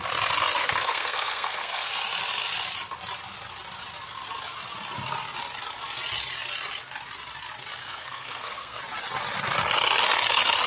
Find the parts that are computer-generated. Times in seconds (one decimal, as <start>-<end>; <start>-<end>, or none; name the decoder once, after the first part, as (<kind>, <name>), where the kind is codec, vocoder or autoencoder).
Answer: 0.6-1.9 (codec, SNAC); 7.8-8.8